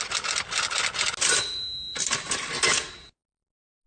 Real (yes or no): yes